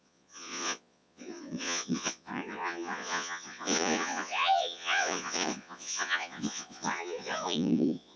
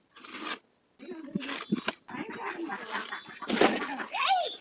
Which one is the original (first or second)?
second